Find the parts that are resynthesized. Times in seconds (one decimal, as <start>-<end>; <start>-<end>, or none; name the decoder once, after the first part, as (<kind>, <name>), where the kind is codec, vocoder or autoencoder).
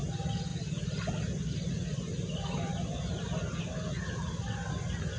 none